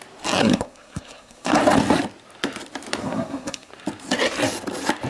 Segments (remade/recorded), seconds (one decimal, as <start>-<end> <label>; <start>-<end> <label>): 0.0-0.4 recorded; 0.4-1.6 remade; 1.6-3.0 recorded; 3.0-3.7 remade; 3.7-5.1 recorded

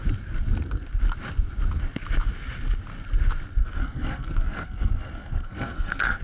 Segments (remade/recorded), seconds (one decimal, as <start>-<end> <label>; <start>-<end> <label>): 0.0-3.6 recorded; 3.6-6.2 remade

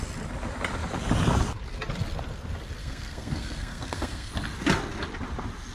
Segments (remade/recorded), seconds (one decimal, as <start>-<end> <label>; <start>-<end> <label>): 0.0-2.8 recorded; 2.8-4.3 remade; 4.3-5.7 recorded

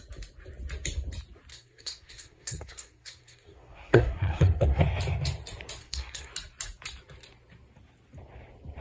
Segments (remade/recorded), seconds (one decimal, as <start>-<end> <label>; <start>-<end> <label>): 0.0-1.5 recorded; 1.5-4.8 remade; 4.8-5.8 recorded; 5.8-6.3 remade; 6.3-8.8 recorded

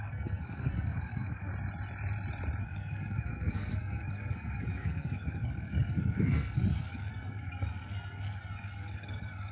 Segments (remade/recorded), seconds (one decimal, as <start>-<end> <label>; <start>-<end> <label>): 0.0-1.5 remade; 1.5-2.6 recorded; 2.6-9.5 remade

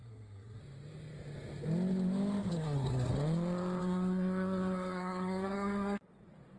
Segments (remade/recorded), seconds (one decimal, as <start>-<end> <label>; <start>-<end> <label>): 0.0-0.6 remade; 0.6-2.5 recorded; 2.5-3.1 remade; 3.1-3.8 recorded; 3.8-6.0 remade; 6.0-6.6 recorded

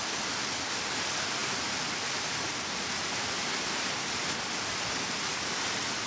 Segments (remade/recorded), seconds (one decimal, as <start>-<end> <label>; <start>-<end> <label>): 0.0-6.1 recorded